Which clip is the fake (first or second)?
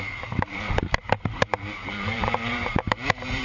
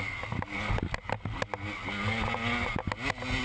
first